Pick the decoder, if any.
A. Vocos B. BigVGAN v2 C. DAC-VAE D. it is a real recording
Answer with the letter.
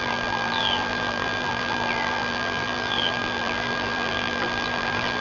B